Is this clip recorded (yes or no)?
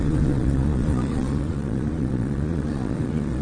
no